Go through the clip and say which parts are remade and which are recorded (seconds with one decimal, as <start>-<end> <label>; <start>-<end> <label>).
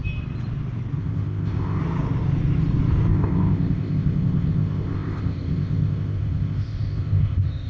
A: 0.0-1.0 recorded; 1.0-1.8 remade; 1.8-3.1 recorded; 3.1-7.7 remade